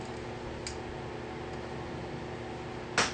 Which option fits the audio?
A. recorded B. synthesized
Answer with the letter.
A